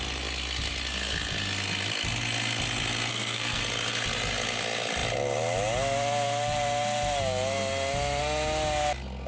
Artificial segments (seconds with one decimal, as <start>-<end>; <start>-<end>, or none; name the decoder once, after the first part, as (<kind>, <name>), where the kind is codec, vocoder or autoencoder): 3.1-3.6 (codec, SNAC)